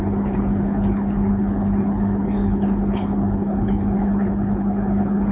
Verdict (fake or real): fake